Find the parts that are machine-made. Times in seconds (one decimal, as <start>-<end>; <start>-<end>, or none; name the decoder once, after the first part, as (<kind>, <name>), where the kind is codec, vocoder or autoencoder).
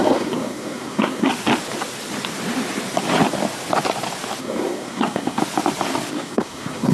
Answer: 0.0-1.3 (codec, SNAC); 4.4-5.4; 6.1-6.9